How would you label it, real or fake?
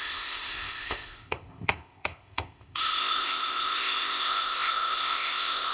fake